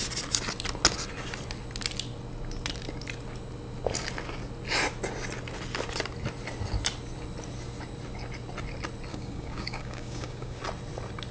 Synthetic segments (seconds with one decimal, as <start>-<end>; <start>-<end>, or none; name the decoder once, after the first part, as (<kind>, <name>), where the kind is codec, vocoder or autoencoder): 9.1-10.6 (codec, DAC)

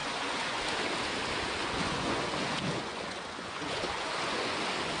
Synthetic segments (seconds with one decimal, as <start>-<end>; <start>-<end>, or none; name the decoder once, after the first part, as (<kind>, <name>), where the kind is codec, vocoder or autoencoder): 0.0-0.6 (vocoder, Vocos); 1.6-4.6